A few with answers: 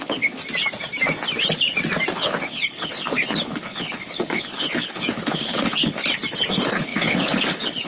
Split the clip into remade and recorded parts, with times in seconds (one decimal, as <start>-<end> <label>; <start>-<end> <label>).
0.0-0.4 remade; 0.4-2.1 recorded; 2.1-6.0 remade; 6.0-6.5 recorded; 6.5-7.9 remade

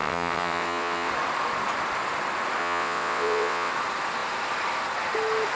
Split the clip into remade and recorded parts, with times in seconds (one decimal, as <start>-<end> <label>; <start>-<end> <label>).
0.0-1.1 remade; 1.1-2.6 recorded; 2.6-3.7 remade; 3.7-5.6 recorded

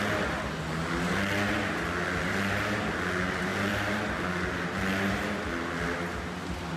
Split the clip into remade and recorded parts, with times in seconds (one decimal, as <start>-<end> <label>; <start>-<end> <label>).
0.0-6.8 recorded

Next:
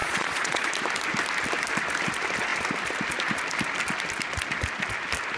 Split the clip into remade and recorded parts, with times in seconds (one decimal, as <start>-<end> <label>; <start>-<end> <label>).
0.0-0.7 remade; 0.7-5.4 recorded

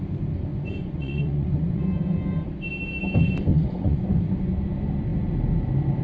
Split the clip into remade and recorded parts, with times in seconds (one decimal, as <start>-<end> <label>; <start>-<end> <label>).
0.0-0.5 recorded; 0.5-1.8 remade; 1.8-3.5 recorded; 3.5-4.0 remade; 4.0-6.0 recorded